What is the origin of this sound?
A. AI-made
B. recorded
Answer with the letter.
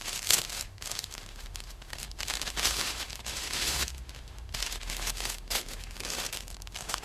A